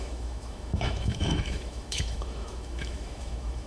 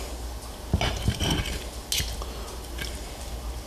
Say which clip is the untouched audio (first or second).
second